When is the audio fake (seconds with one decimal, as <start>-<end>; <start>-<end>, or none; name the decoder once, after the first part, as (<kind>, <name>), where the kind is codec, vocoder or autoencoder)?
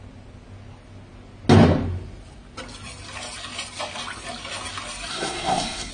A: 5.1-5.9 (codec, SNAC)